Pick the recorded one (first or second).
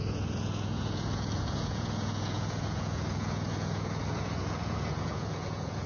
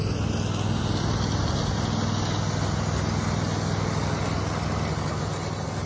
second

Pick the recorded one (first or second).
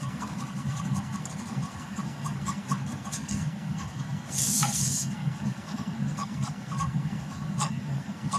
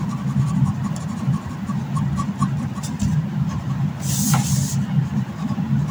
second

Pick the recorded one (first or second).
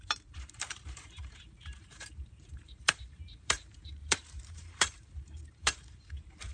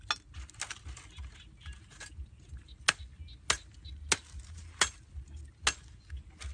second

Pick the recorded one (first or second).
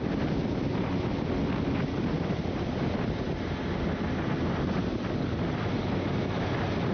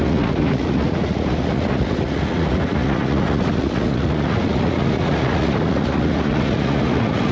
first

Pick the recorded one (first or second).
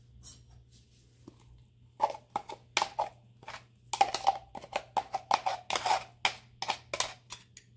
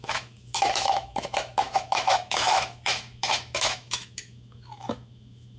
first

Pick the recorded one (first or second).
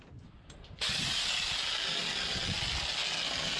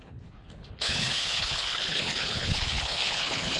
first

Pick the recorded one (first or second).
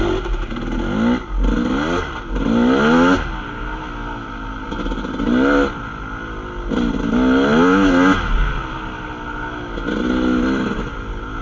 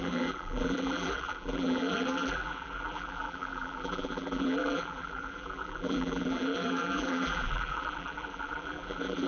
first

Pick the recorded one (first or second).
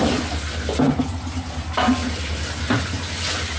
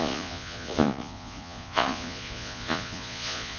first